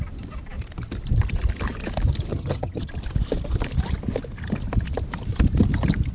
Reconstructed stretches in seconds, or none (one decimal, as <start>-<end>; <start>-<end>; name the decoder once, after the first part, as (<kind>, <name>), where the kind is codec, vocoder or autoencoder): 2.3-2.9 (vocoder, HiFi-GAN)